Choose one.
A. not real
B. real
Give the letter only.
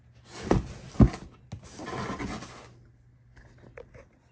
B